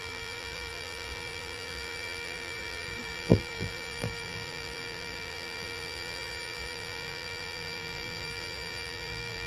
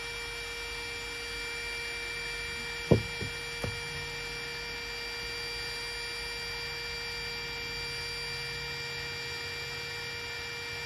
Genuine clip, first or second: second